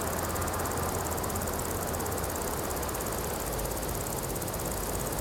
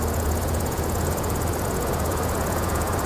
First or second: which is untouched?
first